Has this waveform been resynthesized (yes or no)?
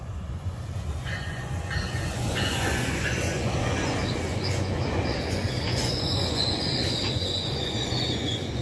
yes